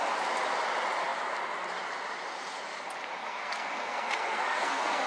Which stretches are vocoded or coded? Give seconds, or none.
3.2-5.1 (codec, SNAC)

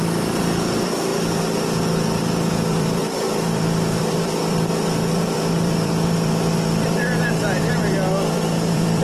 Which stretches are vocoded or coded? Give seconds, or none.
0.0-1.1 (vocoder, BigVGAN v2); 2.2-9.0